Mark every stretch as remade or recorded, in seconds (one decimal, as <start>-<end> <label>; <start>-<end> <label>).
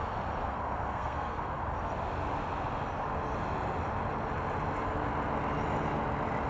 0.0-0.4 recorded; 0.4-1.6 remade; 1.6-6.5 recorded